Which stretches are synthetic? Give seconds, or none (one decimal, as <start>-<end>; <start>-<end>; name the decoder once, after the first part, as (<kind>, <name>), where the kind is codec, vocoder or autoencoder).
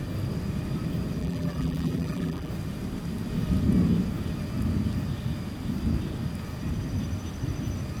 1.2-2.5 (vocoder, BigVGAN v2)